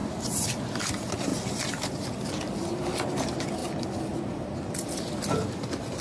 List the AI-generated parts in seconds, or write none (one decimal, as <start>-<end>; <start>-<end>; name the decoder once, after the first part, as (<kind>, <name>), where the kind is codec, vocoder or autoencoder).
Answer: 0.0-0.6 (vocoder, BigVGAN v2)